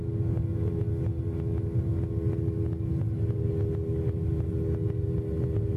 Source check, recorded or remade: recorded